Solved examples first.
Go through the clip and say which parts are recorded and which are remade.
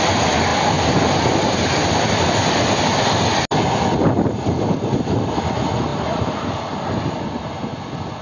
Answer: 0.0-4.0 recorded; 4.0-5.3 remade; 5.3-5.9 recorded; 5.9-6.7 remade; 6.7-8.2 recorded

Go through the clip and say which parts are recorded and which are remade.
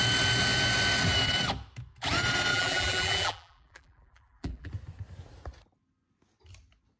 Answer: 0.0-2.5 recorded; 2.5-4.7 remade; 4.7-7.0 recorded